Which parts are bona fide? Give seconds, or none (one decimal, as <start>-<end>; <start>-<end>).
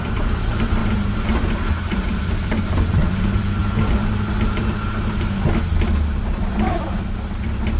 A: 0.8-1.6; 3.6-7.8